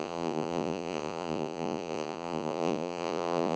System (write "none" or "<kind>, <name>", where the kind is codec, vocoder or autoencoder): vocoder, Vocos